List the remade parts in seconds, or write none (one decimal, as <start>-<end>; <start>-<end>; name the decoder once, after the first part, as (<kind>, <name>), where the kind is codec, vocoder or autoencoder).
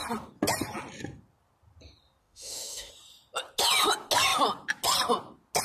2.2-2.9 (autoencoder, DAC-VAE)